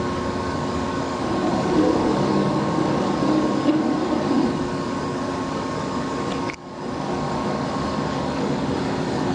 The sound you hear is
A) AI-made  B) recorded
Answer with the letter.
A